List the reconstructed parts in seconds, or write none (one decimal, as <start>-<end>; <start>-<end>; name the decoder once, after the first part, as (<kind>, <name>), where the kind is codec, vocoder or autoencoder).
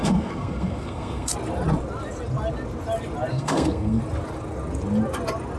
0.0-1.3 (codec, SNAC); 3.3-4.0